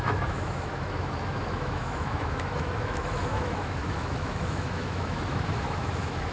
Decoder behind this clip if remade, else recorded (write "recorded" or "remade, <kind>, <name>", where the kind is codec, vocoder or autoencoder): remade, autoencoder, DAC-VAE